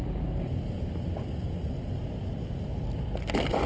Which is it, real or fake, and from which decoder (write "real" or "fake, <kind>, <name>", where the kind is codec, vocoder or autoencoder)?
real